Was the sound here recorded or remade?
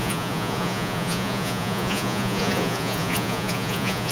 remade